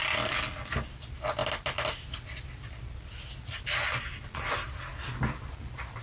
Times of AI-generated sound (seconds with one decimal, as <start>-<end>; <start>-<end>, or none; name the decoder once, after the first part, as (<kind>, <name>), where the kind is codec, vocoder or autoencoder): none